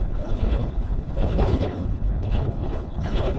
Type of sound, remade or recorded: remade